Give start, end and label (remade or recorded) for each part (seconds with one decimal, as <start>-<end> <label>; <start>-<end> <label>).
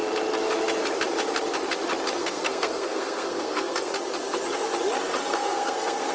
0.0-2.2 recorded; 2.2-3.9 remade; 3.9-5.3 recorded; 5.3-6.1 remade